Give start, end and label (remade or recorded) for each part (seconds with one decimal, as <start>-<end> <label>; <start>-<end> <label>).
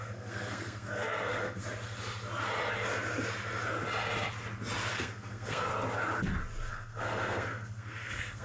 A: 0.0-1.6 remade; 1.6-4.9 recorded; 4.9-5.7 remade; 5.7-6.7 recorded; 6.7-8.4 remade